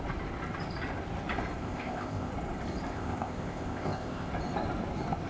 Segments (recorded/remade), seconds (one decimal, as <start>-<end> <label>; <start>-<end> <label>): 0.0-1.6 recorded; 1.6-2.3 remade; 2.3-2.9 recorded; 2.9-4.3 remade; 4.3-5.3 recorded